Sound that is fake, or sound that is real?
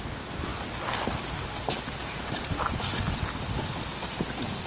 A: real